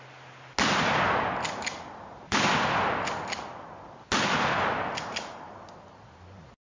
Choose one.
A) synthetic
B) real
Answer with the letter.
B